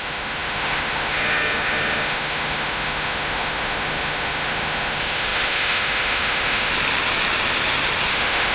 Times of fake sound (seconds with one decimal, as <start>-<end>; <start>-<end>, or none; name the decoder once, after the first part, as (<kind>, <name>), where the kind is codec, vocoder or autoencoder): 0.0-6.7 (autoencoder, DAC-VAE); 8.1-8.5